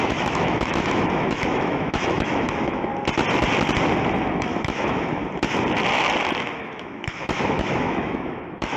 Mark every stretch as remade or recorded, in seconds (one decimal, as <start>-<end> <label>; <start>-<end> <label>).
0.0-2.9 remade; 2.9-4.3 recorded; 4.3-5.2 remade; 5.2-6.6 recorded; 6.6-8.8 remade